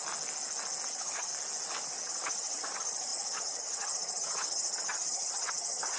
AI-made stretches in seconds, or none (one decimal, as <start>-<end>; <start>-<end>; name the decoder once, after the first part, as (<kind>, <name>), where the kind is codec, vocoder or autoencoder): 0.9-1.3 (vocoder, HiFi-GAN); 2.0-6.0